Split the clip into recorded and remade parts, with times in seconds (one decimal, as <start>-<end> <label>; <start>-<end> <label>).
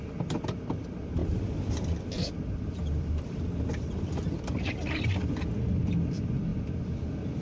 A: 0.0-7.4 recorded